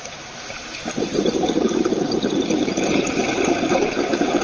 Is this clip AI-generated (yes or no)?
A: yes